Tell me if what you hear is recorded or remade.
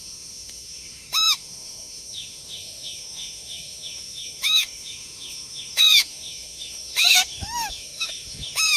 remade